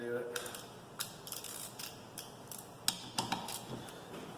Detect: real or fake real